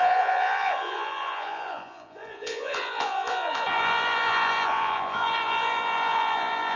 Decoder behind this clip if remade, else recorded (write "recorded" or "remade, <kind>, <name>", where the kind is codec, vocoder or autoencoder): remade, vocoder, Vocos